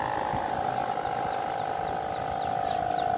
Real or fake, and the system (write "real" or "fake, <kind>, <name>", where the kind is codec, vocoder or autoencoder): real